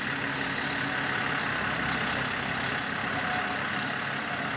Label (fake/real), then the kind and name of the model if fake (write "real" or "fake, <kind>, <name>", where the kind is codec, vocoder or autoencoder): real